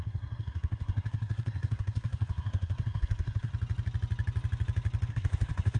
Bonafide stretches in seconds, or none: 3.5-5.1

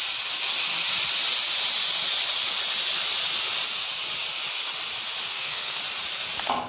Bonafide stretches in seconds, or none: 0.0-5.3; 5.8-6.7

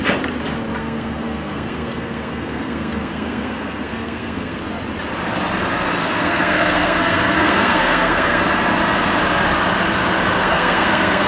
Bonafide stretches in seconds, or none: 0.0-0.8; 4.6-6.0; 8.4-10.4

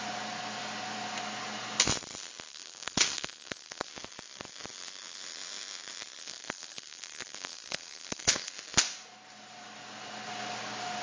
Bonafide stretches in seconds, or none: 0.0-2.5; 3.9-6.2; 8.5-11.0

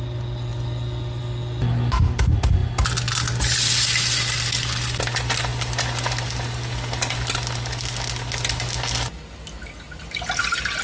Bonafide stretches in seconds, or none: 0.0-10.8

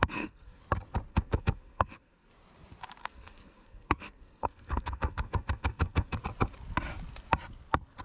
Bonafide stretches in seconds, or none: 0.6-1.1; 2.3-3.0; 6.2-8.0

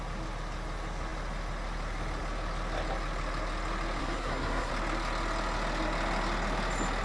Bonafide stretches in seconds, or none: 0.0-4.0; 4.7-7.0

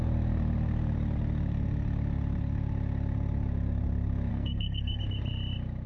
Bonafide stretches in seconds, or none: 0.0-4.3; 5.0-5.9